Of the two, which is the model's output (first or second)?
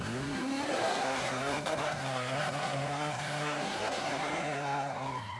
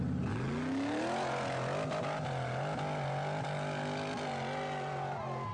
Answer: first